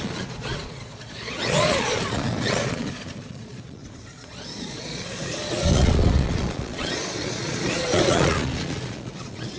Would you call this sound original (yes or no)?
no